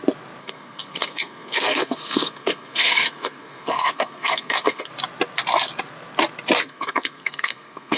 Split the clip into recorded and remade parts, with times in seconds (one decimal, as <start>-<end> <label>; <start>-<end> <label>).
0.0-0.4 recorded; 0.4-4.9 remade; 4.9-6.6 recorded; 6.6-8.0 remade